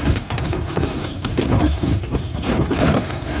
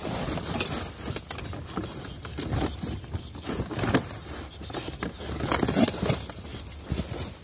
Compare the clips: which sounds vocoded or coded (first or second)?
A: first